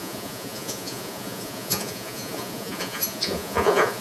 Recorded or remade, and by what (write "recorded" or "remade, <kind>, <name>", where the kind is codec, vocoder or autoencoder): remade, vocoder, Vocos